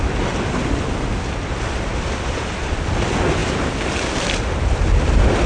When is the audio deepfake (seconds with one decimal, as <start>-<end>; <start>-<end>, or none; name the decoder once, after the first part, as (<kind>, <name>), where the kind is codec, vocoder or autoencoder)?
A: none